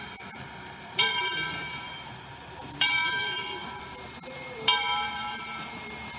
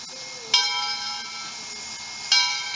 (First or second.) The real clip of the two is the second